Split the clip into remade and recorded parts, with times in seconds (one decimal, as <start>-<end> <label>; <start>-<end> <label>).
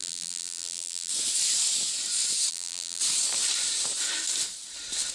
0.0-1.1 remade; 1.1-2.5 recorded; 2.5-3.0 remade; 3.0-5.1 recorded